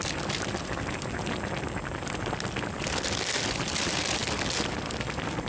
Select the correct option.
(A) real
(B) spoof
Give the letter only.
A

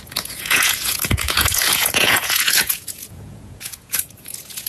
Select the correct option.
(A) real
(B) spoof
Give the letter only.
B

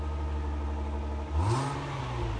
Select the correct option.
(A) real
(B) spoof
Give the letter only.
A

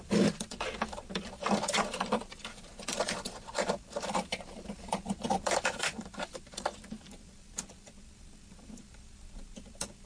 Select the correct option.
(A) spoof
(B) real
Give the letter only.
A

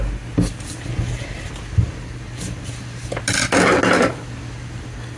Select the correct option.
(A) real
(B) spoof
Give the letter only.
A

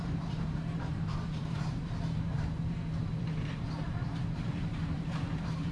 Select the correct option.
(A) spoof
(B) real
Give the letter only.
A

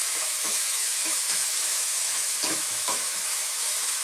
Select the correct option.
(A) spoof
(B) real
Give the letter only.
A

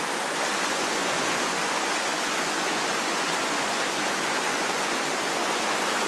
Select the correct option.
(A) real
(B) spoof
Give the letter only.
B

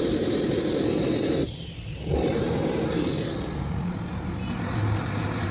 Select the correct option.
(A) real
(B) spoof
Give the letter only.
A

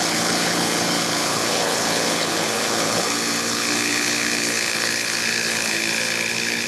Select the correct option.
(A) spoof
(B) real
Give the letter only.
A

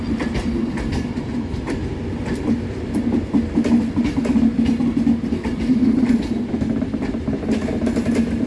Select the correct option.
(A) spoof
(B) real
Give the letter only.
A